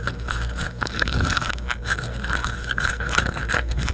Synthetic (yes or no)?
yes